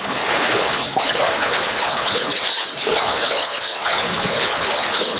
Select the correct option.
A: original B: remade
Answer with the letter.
B